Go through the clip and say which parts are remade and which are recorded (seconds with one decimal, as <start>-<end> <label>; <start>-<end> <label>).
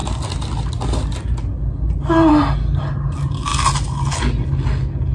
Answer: 0.0-5.1 recorded